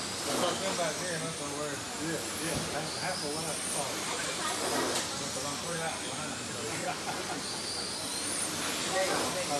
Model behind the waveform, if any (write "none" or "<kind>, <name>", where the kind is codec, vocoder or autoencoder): none